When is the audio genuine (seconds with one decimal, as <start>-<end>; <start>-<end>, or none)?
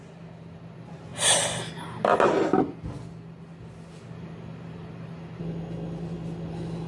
0.0-6.9